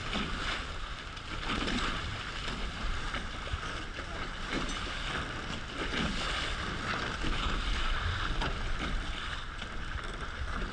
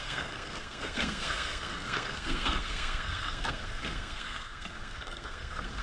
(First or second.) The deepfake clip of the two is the second